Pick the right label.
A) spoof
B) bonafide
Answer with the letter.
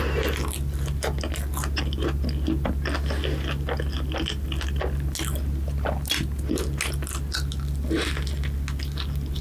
B